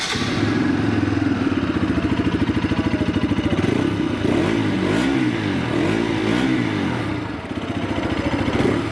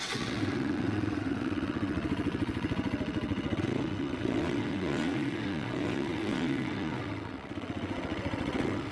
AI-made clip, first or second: second